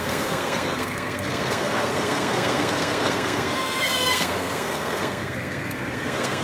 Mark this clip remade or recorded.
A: remade